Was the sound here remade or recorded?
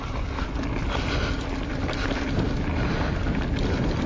recorded